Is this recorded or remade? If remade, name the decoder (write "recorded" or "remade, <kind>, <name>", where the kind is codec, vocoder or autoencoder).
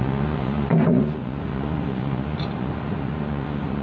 remade, vocoder, Vocos